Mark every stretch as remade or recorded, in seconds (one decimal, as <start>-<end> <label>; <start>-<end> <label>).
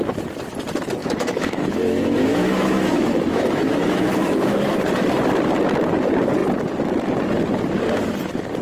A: 0.0-1.0 recorded; 1.0-4.6 remade; 4.6-8.6 recorded